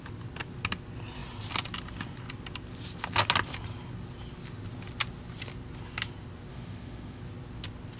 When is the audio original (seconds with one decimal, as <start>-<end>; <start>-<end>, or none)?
0.0-6.5; 7.2-8.0